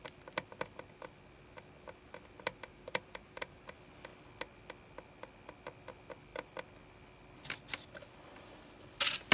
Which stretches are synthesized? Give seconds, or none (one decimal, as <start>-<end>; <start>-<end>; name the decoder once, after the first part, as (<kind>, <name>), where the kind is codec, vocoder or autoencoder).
2.7-3.6 (vocoder, BigVGAN v2)